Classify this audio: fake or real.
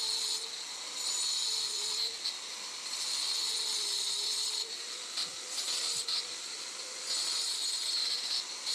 real